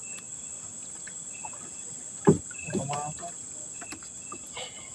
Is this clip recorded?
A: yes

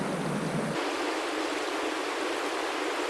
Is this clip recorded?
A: yes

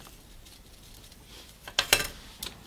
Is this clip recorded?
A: no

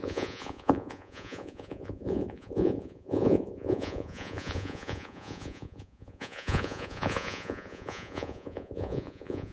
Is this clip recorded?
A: no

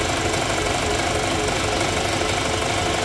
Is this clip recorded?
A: yes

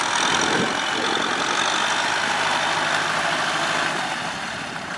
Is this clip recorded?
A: yes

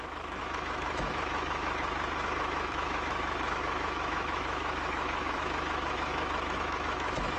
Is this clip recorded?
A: no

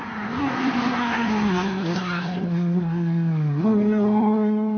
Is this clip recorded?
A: no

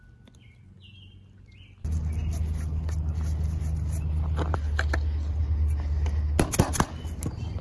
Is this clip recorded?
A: yes